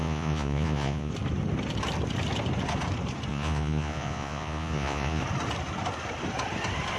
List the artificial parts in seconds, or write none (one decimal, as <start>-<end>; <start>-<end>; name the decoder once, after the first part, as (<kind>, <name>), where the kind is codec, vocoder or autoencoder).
0.0-1.1 (vocoder, Vocos); 3.3-5.2